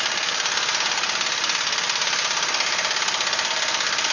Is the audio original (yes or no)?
yes